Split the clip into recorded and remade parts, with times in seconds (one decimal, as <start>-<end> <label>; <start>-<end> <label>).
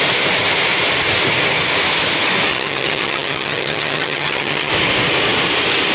0.0-2.5 recorded; 2.5-4.7 remade; 4.7-5.9 recorded